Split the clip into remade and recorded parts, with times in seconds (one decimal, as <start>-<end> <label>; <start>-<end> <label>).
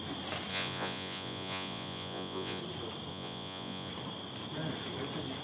0.0-0.5 recorded; 0.5-2.6 remade; 2.6-3.1 recorded; 3.1-3.9 remade; 3.9-5.4 recorded